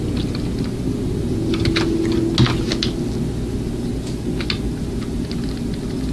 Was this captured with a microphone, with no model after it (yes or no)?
yes